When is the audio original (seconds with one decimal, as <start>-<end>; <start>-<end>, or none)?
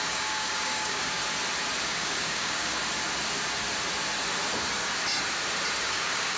1.2-1.8; 2.8-5.8